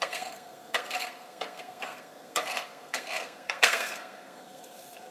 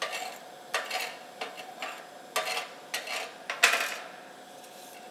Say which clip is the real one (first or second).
second